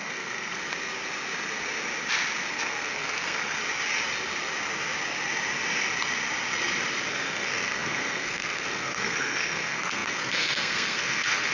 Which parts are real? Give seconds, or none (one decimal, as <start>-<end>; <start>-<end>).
0.6-2.5; 3.6-7.1